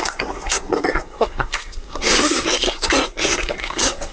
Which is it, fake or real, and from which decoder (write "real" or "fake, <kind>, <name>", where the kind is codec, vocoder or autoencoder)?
fake, codec, SNAC